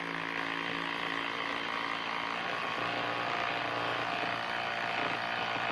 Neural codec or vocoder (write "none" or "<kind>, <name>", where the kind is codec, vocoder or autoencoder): none